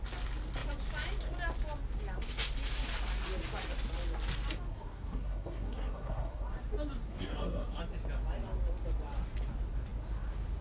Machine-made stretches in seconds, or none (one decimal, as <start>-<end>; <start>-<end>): 4.7-6.5; 7.1-7.8